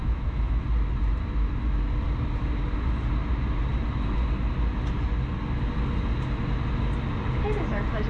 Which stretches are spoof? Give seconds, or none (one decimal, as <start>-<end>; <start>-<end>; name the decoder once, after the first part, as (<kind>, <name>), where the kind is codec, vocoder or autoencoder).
0.0-0.6 (autoencoder, DAC-VAE)